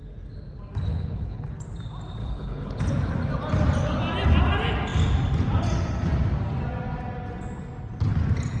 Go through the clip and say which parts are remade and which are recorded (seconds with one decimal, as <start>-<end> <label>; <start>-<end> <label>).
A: 0.0-0.9 recorded; 0.9-1.5 remade; 1.5-2.2 recorded; 2.2-2.8 remade; 2.8-8.6 recorded